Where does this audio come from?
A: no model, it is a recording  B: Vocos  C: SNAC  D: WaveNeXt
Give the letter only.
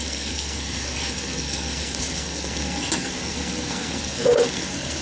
C